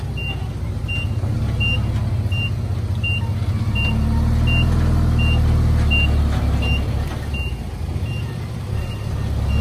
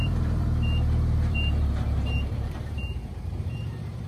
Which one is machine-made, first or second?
second